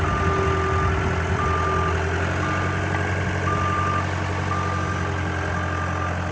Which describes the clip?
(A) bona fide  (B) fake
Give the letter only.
A